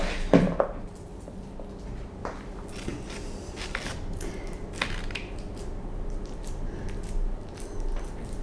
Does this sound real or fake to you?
real